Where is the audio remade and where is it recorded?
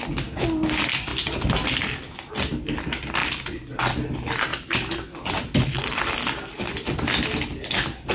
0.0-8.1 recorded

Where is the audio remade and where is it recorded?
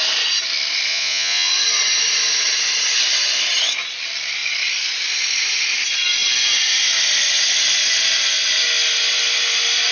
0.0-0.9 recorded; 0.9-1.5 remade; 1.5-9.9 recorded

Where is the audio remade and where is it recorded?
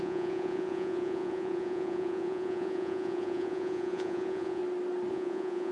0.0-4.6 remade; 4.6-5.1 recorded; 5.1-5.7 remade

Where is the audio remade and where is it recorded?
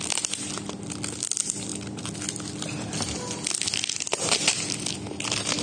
0.0-5.6 recorded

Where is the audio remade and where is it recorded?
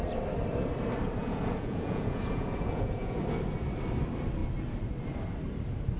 0.0-1.2 recorded; 1.2-3.2 remade; 3.2-6.0 recorded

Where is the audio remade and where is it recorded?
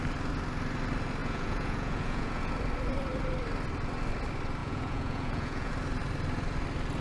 0.0-1.2 recorded; 1.2-2.5 remade; 2.5-4.6 recorded; 4.6-5.7 remade; 5.7-7.0 recorded